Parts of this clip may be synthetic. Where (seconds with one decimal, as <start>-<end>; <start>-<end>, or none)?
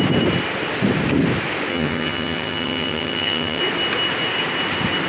1.7-3.6